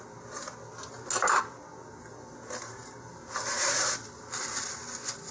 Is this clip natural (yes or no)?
yes